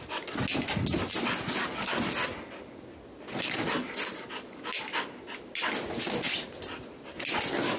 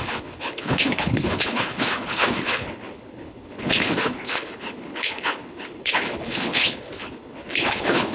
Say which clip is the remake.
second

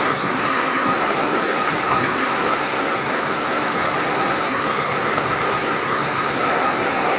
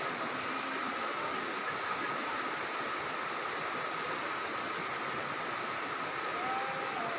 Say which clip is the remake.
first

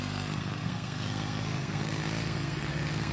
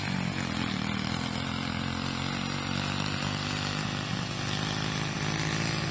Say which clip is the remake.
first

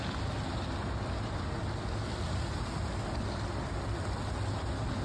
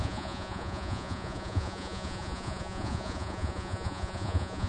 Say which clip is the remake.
second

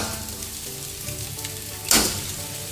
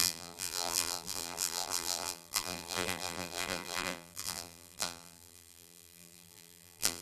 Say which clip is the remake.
second